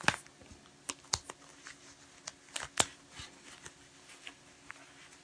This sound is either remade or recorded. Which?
recorded